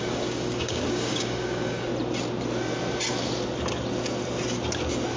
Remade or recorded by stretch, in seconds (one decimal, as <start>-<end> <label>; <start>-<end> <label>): 0.0-1.9 remade; 1.9-5.2 recorded